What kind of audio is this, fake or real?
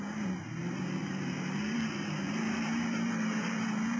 fake